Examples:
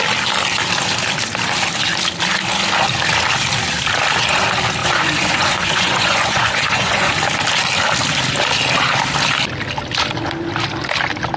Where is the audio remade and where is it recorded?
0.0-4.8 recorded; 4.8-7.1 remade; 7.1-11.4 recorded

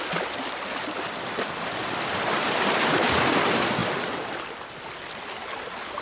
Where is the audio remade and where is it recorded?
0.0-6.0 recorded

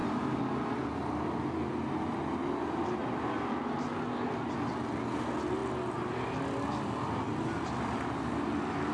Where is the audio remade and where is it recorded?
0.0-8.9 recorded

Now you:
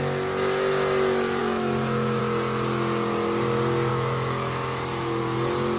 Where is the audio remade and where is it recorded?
0.0-1.4 recorded; 1.4-2.2 remade; 2.2-3.9 recorded; 3.9-5.2 remade; 5.2-5.8 recorded